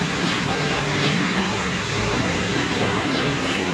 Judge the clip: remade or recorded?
remade